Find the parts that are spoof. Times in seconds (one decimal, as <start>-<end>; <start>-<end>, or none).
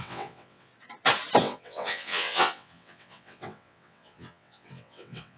0.0-0.7; 1.4-5.4